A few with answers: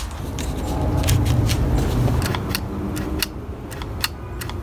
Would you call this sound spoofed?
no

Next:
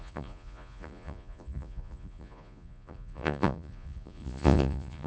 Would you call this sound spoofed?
yes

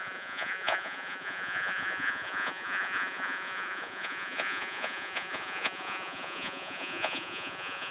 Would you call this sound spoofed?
yes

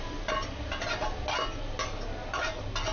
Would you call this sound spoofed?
no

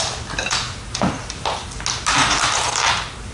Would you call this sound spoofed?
no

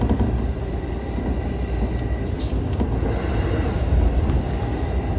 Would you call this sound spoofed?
no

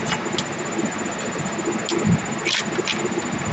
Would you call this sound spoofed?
no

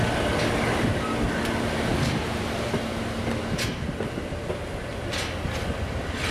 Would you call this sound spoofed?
no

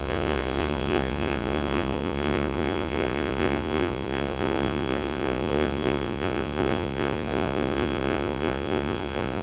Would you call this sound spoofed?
yes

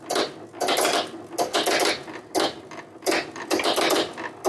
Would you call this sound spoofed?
no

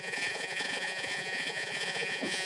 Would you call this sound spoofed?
yes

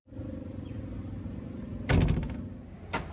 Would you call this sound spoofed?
no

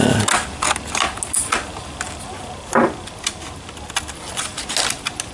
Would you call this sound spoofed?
no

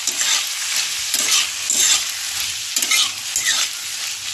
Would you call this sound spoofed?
no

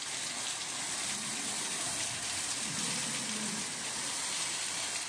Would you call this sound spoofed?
no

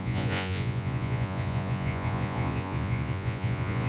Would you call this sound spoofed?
yes